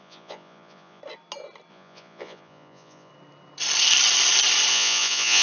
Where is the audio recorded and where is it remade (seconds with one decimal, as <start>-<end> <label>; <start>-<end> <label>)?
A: 0.0-1.0 remade; 1.0-1.7 recorded; 1.7-3.1 remade; 3.1-4.7 recorded; 4.7-5.4 remade